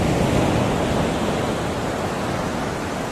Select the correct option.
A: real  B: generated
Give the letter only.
A